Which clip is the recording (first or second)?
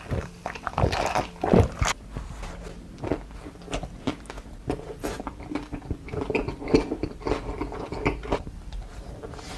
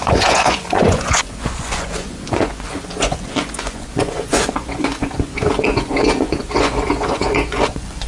first